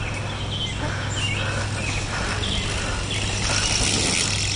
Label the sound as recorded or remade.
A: recorded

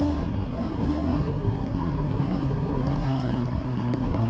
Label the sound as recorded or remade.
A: remade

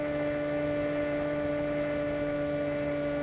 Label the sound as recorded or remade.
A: recorded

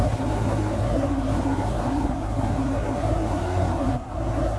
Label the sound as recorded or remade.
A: remade